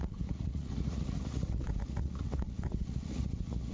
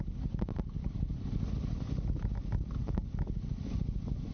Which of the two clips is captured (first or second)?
second